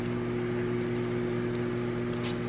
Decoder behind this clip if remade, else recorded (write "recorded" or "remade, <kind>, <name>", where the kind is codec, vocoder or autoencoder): recorded